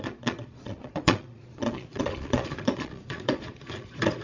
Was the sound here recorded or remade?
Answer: remade